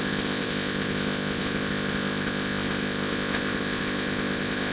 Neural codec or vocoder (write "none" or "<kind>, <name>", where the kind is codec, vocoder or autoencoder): codec, ZipCodec